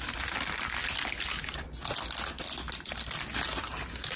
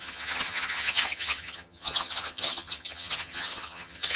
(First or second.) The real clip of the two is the first